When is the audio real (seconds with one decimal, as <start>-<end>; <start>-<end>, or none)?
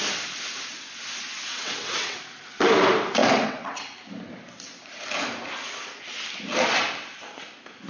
0.0-1.5; 2.2-3.2; 3.7-7.9